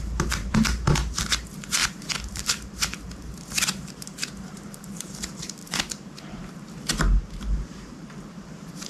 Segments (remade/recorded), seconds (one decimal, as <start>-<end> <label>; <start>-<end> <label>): 0.0-8.9 remade